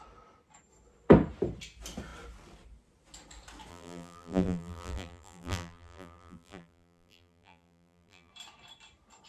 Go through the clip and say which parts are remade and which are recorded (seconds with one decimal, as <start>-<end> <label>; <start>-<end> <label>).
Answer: 0.0-3.7 recorded; 3.7-8.3 remade; 8.3-9.3 recorded